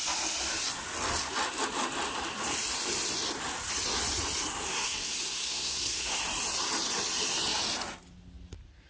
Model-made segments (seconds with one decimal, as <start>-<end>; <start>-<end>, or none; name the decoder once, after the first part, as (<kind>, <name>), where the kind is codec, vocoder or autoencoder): 4.7-6.2 (codec, SNAC)